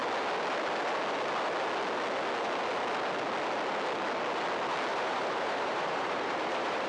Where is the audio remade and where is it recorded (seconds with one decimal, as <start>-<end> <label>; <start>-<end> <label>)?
0.0-4.9 recorded; 4.9-6.9 remade